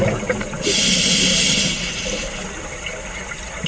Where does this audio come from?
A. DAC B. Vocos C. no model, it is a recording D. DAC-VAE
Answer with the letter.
C